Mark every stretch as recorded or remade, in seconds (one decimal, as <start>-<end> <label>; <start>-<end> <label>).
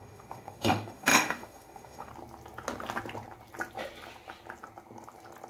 0.0-2.1 remade; 2.1-5.5 recorded